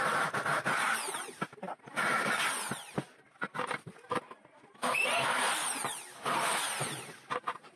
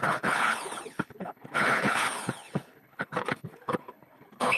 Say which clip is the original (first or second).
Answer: first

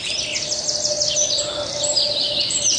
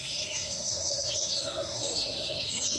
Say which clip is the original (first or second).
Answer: first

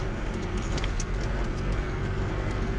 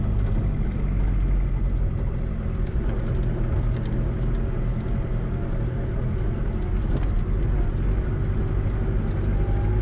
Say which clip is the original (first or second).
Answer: second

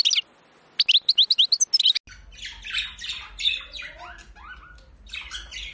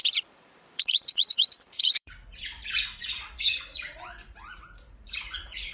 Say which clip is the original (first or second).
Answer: first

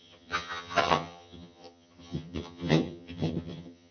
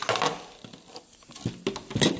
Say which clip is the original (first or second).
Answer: second